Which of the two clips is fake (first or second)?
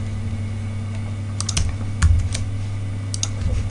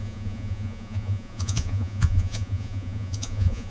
second